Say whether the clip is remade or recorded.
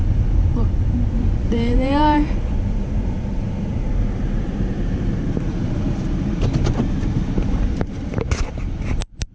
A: remade